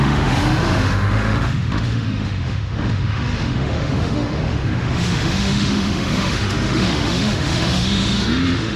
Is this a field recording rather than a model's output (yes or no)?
no